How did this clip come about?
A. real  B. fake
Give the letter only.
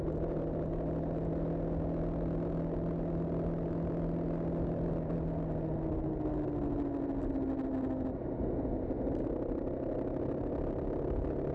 A